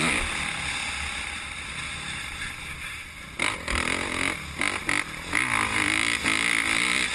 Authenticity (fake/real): real